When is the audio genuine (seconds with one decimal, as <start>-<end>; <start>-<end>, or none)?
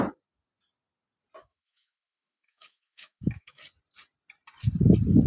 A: 0.0-1.4; 3.6-5.3